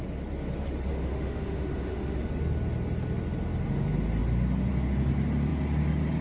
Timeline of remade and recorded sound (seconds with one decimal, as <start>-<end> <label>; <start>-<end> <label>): 0.0-0.9 recorded; 0.9-2.2 remade; 2.2-6.2 recorded